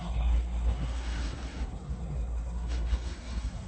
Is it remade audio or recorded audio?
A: remade